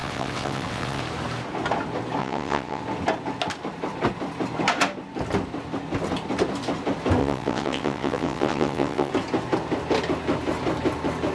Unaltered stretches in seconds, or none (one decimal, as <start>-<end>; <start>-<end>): 1.0-2.2; 2.8-7.2; 9.1-11.3